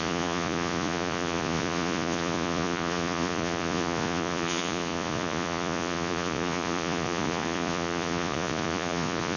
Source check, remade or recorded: remade